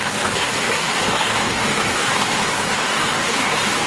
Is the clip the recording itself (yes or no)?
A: no